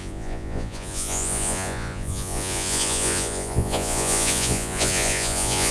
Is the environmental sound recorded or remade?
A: remade